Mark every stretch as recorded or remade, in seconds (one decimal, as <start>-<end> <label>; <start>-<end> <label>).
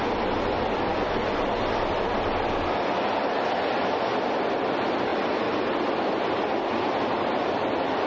0.0-8.1 recorded